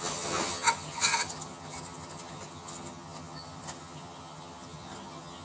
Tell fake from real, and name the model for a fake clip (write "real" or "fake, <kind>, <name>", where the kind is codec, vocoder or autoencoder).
fake, vocoder, HiFi-GAN